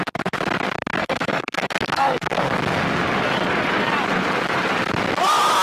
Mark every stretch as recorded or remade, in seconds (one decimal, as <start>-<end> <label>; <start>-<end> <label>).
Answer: 0.0-1.0 recorded; 1.0-2.5 remade; 2.5-5.6 recorded